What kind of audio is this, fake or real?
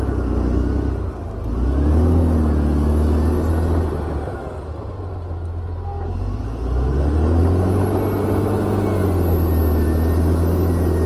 real